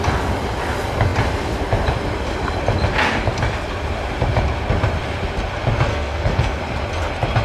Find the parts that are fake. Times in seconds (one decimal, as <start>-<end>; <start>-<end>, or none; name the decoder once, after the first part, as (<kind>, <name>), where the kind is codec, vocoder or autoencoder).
5.9-6.6 (codec, SNAC)